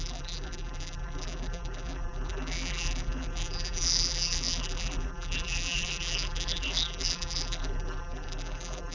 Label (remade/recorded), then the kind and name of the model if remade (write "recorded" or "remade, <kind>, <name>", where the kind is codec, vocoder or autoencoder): remade, vocoder, BigVGAN v2